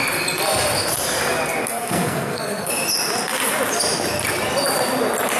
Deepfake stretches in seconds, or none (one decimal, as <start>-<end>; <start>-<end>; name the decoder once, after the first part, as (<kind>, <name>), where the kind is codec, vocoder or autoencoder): 1.6-2.7 (codec, SNAC)